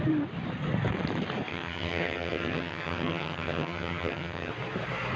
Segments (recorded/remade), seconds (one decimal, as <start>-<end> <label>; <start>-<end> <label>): 0.0-1.5 recorded; 1.5-4.5 remade; 4.5-5.2 recorded